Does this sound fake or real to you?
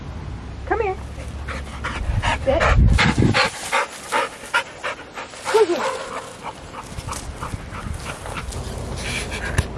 real